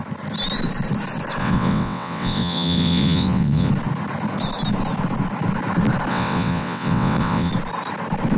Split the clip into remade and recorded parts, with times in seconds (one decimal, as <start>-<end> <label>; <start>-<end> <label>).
0.0-1.4 recorded; 1.4-3.7 remade; 3.7-6.1 recorded; 6.1-7.5 remade; 7.5-8.4 recorded